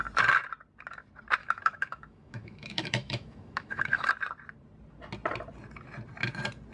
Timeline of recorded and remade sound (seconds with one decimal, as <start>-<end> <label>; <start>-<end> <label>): 0.0-1.4 recorded; 1.4-4.1 remade; 4.1-6.7 recorded